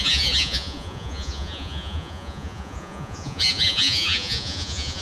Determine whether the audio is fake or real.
fake